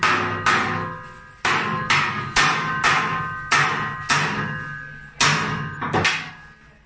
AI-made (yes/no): no